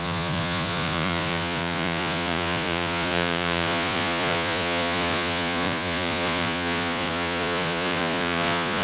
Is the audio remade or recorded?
remade